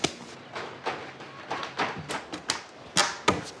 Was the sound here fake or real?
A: real